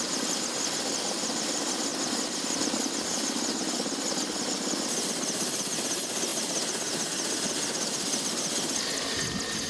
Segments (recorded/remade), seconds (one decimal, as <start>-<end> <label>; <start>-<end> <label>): 0.0-9.7 recorded